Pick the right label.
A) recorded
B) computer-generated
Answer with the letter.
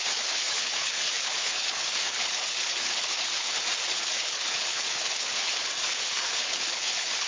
B